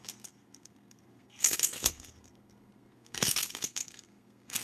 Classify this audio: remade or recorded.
remade